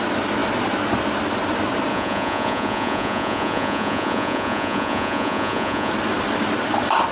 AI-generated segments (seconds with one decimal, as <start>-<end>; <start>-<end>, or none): 1.9-5.9